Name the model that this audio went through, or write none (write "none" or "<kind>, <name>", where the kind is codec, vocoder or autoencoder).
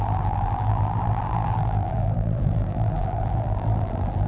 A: vocoder, BigVGAN v2